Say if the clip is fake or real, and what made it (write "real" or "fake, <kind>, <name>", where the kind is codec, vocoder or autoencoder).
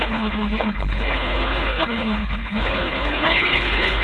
fake, codec, HILCodec